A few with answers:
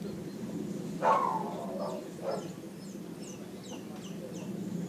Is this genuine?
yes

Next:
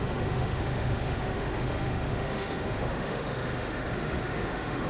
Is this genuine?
no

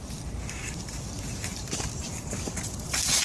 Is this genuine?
no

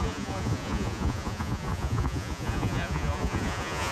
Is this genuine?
no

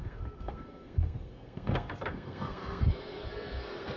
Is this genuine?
no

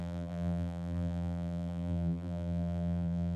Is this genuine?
no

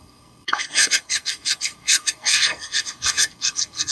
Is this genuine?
no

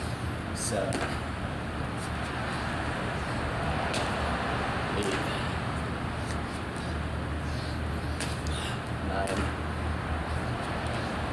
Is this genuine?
yes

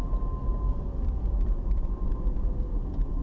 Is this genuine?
no